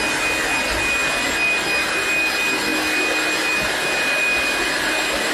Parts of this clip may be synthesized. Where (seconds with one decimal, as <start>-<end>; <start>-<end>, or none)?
none